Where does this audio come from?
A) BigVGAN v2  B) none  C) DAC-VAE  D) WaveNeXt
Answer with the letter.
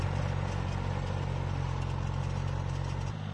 B